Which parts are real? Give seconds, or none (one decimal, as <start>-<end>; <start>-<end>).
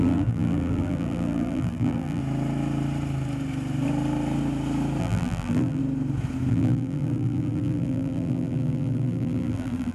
2.2-5.0; 5.8-6.5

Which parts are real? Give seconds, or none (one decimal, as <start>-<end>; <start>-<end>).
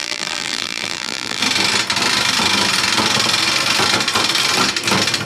1.4-5.3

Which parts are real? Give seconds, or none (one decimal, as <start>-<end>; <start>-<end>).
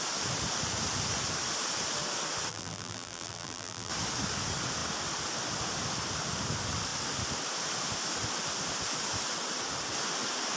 0.0-2.5; 3.9-10.6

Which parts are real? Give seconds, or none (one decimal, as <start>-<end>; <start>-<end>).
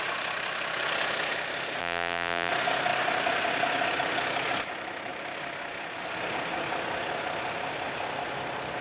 0.0-1.8; 2.5-8.8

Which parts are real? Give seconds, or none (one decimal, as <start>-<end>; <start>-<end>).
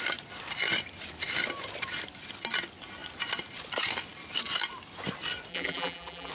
0.0-5.5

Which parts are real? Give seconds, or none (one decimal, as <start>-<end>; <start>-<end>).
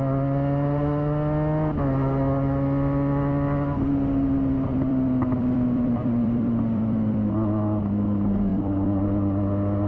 0.0-4.7; 7.3-8.5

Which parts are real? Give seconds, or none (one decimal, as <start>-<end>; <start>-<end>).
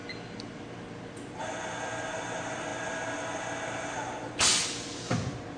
0.0-5.6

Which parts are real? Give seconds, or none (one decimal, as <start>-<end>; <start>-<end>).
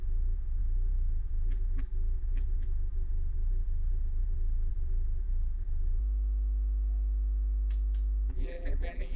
6.0-8.3